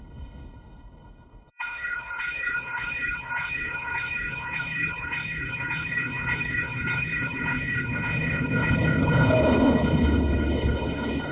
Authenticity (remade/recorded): remade